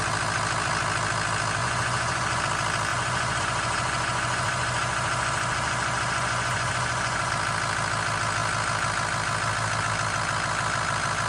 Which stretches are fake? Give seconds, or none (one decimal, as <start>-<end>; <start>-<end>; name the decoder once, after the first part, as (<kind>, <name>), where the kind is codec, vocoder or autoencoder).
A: 1.6-2.4 (vocoder, Vocos); 2.9-7.3